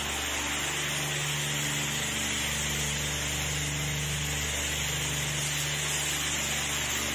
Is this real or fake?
real